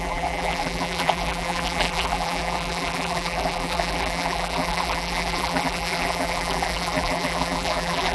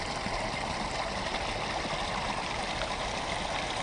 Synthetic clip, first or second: first